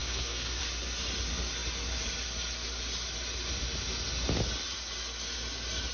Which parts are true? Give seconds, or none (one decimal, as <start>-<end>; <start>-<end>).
0.6-5.9